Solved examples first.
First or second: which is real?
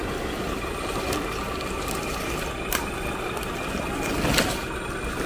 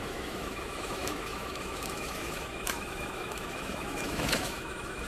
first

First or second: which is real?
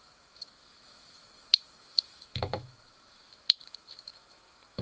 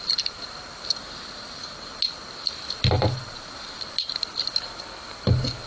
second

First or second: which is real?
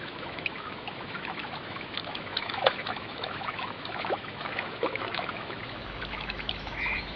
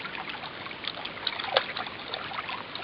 second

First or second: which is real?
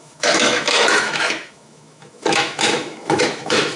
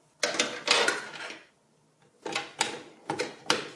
second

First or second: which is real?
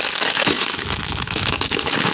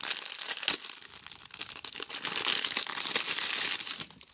second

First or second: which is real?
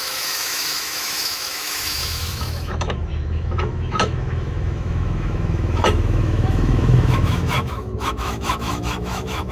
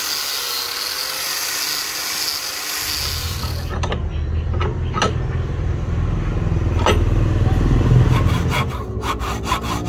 second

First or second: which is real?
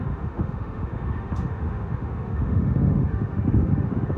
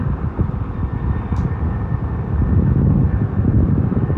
second